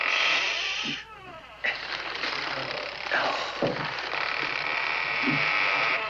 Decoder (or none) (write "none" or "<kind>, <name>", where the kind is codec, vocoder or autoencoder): vocoder, BigVGAN v2